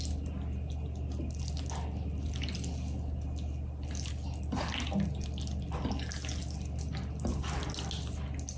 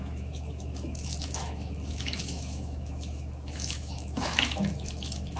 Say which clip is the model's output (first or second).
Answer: second